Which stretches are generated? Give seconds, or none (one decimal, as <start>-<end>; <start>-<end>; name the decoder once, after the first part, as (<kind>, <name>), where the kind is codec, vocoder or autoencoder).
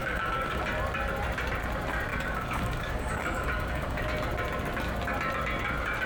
0.0-0.6 (codec, DAC); 2.1-4.0